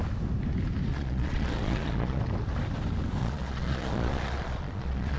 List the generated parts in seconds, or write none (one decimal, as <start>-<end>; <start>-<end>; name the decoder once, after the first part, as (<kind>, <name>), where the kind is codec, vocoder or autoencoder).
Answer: 0.9-2.2 (vocoder, Vocos); 3.2-5.2